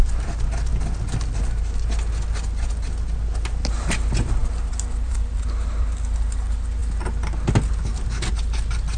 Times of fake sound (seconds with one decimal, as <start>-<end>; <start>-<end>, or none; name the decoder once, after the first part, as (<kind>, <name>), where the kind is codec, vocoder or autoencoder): none